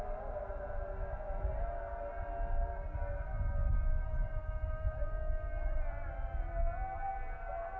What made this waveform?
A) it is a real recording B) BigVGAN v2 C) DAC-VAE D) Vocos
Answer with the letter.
A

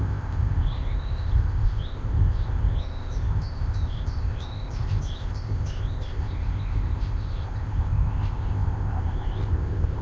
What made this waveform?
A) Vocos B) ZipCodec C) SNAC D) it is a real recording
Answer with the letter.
B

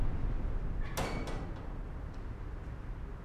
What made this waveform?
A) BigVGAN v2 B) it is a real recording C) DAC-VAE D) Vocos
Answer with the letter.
B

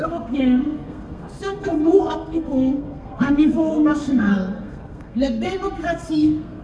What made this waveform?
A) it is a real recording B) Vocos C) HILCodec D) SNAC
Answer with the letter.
D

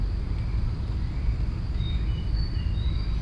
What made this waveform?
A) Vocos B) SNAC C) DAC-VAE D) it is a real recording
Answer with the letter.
D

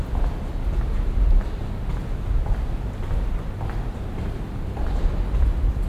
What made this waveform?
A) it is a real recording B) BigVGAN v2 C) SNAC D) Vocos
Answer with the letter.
A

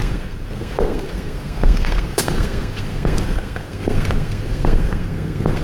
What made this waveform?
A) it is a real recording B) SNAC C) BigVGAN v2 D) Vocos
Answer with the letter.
B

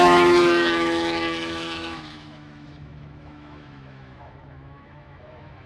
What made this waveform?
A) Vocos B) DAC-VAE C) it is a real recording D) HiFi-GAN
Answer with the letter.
B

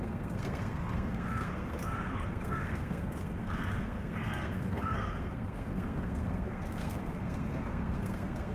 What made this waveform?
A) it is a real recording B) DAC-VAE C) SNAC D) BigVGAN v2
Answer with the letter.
C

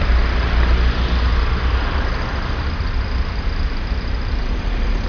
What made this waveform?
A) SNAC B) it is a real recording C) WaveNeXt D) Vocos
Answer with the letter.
B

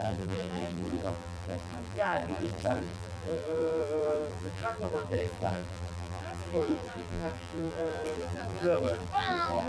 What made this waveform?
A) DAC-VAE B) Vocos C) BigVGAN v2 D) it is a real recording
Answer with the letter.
C